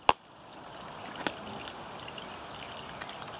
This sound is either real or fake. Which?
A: real